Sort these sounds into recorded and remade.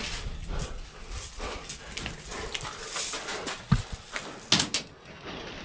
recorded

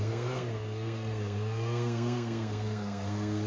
remade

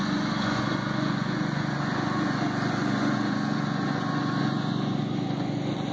remade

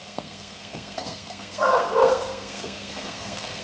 remade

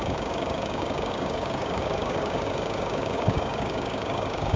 remade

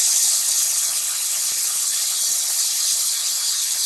remade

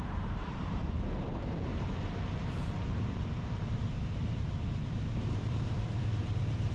remade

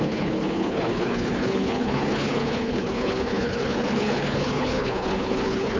remade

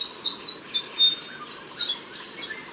recorded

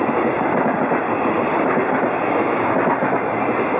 recorded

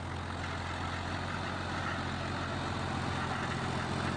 recorded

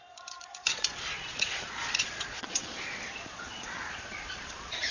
remade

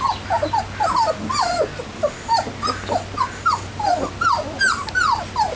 recorded